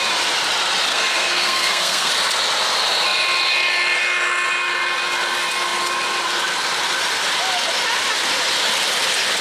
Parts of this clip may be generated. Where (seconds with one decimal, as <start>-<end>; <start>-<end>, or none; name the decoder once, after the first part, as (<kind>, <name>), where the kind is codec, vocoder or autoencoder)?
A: 0.9-2.1 (codec, SNAC)